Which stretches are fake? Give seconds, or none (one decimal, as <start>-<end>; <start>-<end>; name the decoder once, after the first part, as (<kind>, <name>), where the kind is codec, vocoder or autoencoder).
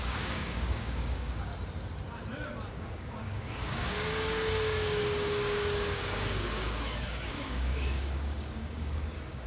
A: 0.0-1.5 (codec, DAC); 2.7-9.5